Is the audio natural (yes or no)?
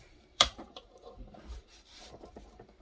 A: no